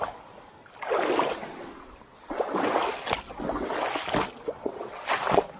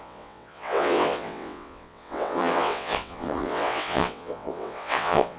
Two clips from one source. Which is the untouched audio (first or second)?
first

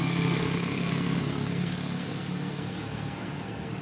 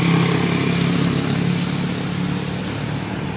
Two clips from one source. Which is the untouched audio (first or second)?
second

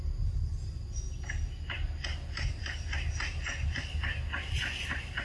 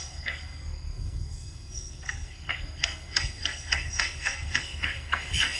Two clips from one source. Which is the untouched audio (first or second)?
first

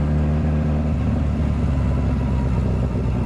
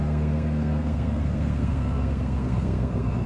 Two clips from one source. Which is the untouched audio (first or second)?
first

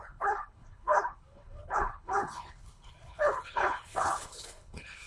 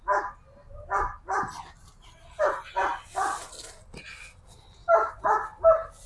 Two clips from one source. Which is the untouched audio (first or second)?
second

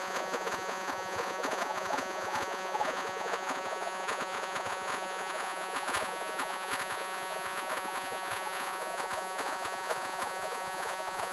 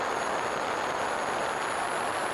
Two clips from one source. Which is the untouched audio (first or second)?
second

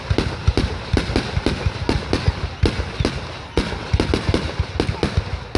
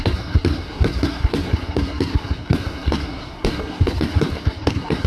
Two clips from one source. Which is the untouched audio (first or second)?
first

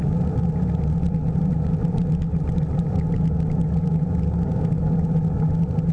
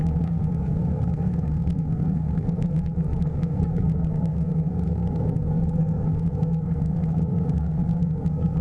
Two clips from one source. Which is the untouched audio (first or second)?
first